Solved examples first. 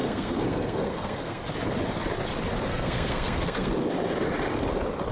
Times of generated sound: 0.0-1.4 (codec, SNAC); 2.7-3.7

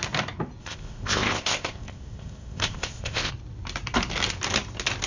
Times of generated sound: 0.6-3.3 (codec, ZipCodec)

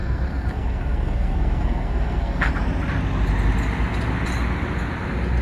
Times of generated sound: 0.0-2.5 (codec, SNAC)

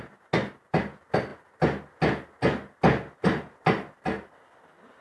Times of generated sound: none